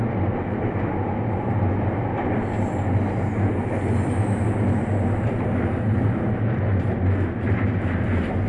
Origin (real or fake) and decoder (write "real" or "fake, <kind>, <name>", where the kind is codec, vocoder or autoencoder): real